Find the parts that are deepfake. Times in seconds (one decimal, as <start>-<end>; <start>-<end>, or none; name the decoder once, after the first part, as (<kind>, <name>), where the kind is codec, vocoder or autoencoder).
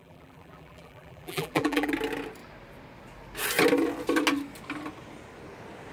0.0-1.9 (vocoder, BigVGAN v2)